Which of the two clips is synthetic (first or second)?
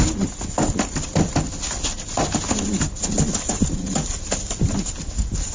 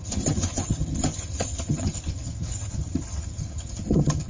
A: second